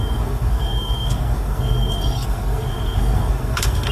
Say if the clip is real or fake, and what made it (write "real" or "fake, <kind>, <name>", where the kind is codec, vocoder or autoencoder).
fake, codec, SNAC